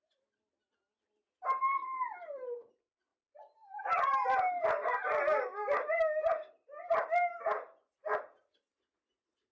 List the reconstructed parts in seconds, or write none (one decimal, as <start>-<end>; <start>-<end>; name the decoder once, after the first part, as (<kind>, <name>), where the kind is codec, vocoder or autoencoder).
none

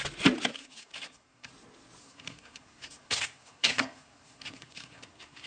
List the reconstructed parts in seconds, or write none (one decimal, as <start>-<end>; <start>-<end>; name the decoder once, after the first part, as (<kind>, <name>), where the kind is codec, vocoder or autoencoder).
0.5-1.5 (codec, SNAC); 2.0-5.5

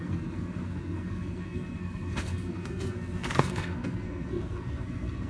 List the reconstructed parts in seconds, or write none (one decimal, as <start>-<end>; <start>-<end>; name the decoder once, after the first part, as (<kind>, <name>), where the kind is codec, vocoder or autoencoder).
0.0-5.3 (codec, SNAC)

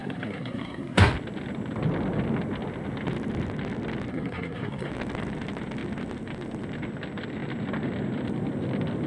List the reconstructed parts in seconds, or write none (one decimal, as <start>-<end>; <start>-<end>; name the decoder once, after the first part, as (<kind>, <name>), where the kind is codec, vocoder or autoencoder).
0.0-1.1 (codec, SNAC); 4.1-4.9

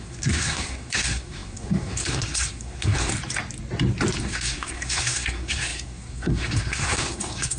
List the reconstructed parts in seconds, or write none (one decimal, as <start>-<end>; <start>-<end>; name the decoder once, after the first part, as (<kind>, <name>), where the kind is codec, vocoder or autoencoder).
0.0-3.1 (codec, SNAC); 4.2-7.6

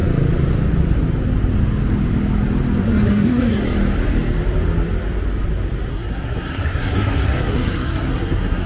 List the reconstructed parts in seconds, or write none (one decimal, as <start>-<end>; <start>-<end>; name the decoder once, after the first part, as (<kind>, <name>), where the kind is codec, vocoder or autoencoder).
2.8-3.6 (codec, SNAC); 5.9-8.7